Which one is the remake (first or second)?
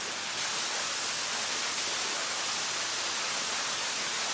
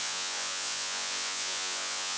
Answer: second